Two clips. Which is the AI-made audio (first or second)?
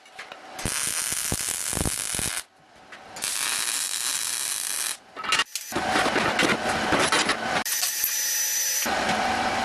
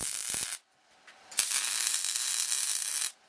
second